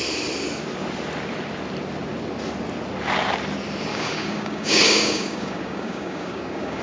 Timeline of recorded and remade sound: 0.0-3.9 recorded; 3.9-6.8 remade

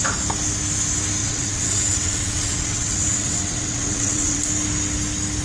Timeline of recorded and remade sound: 0.0-1.2 recorded; 1.2-4.4 remade; 4.4-5.4 recorded

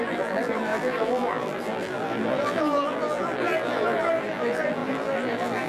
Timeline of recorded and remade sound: 0.0-5.7 remade

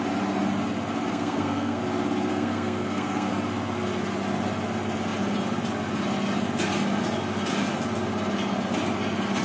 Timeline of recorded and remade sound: 0.0-1.1 recorded; 1.1-1.8 remade; 1.8-2.3 recorded; 2.3-3.3 remade; 3.3-9.4 recorded

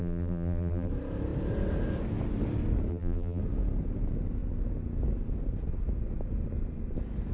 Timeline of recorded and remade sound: 0.0-0.9 remade; 0.9-2.9 recorded; 2.9-3.4 remade; 3.4-7.3 recorded

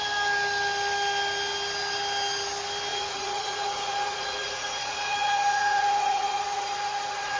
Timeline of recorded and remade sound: 0.0-2.9 recorded; 2.9-7.4 remade

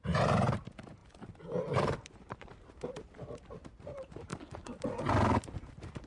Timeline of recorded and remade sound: 0.0-1.0 remade; 1.0-2.1 recorded; 2.1-4.3 remade; 4.3-5.4 recorded; 5.4-6.1 remade